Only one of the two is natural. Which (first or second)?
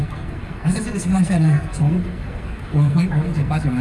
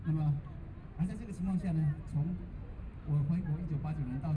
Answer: second